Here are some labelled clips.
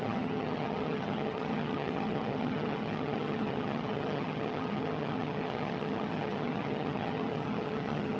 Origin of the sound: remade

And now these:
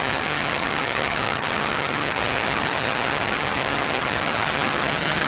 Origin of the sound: remade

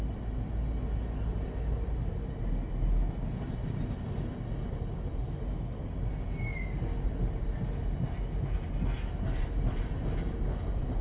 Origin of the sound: recorded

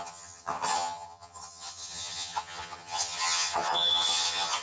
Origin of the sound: remade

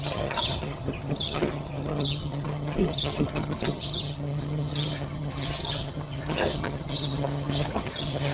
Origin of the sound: remade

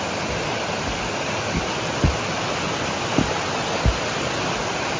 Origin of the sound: recorded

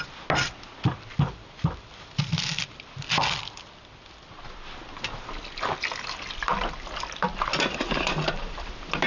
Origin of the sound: recorded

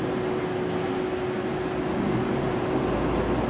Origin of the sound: recorded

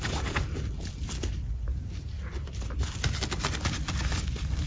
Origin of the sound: recorded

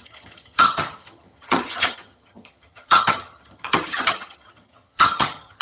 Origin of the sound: remade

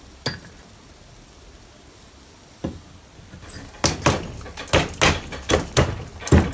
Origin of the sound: recorded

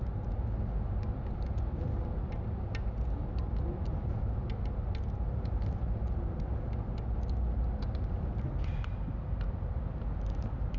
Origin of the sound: recorded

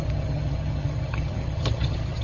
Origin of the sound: remade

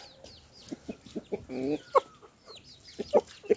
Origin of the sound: recorded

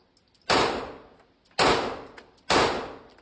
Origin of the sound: recorded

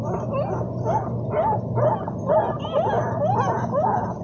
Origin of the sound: recorded